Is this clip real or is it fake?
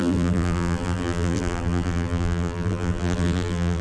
fake